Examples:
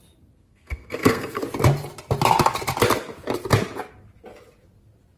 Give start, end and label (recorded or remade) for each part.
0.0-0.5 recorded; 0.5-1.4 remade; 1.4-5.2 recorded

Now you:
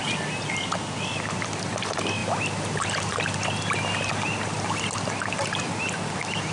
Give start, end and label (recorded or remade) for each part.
0.0-2.2 recorded; 2.2-4.9 remade; 4.9-6.5 recorded

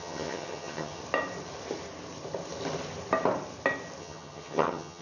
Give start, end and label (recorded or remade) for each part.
0.0-1.0 remade; 1.0-4.0 recorded; 4.0-5.0 remade

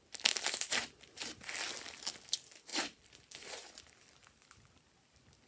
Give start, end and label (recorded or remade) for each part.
0.0-2.7 recorded; 2.7-4.9 remade; 4.9-5.5 recorded

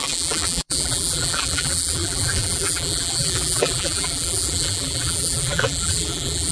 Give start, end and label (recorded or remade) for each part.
0.0-6.5 remade